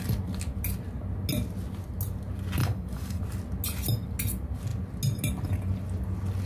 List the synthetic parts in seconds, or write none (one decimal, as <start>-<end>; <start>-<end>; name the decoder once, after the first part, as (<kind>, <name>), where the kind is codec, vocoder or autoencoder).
2.6-3.2 (codec, DAC)